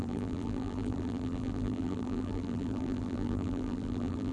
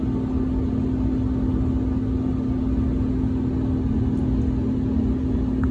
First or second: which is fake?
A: first